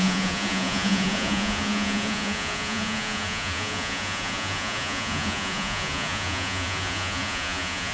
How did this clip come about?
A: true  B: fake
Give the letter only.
B